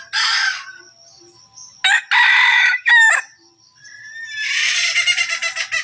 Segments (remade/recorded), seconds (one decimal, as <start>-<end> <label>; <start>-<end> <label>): 0.0-2.5 recorded; 2.5-3.2 remade; 3.2-5.8 recorded